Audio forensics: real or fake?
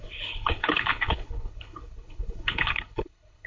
fake